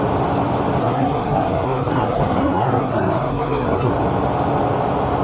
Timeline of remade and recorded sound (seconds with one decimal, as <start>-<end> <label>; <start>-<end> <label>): 0.0-0.8 recorded; 0.8-3.9 remade; 3.9-5.2 recorded